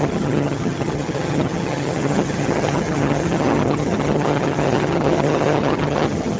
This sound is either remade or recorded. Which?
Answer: remade